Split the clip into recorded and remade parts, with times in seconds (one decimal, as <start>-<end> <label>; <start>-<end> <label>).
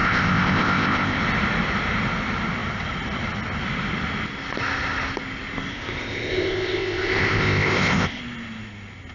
0.0-1.2 remade; 1.2-5.7 recorded; 5.7-8.2 remade; 8.2-9.1 recorded